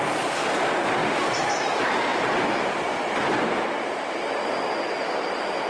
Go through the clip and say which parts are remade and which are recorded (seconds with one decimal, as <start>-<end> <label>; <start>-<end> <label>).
0.0-1.0 recorded; 1.0-1.5 remade; 1.5-5.7 recorded